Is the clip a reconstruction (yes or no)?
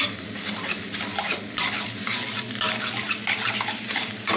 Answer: no